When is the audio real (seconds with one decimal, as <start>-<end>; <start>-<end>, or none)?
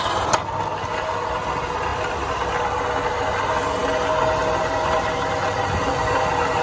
0.0-6.6